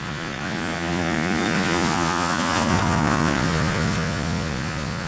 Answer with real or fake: fake